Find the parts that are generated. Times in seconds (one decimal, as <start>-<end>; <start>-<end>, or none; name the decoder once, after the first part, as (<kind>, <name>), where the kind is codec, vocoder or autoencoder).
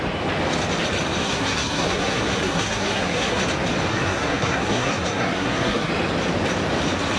1.2-3.4 (codec, SNAC); 3.9-5.9